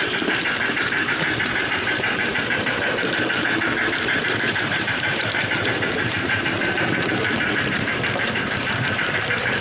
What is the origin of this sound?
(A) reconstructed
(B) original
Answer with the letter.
A